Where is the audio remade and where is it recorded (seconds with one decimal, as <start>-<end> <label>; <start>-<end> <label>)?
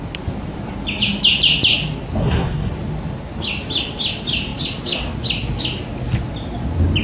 0.0-2.2 recorded; 2.2-2.7 remade; 2.7-7.0 recorded